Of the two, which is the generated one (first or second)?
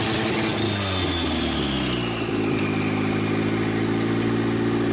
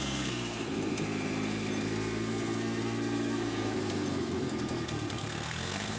second